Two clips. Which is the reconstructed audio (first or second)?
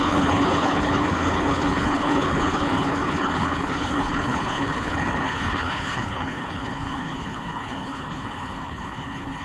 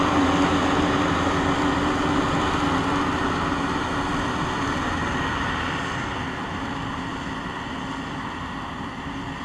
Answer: first